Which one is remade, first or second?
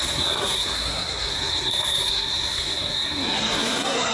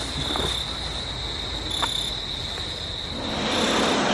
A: first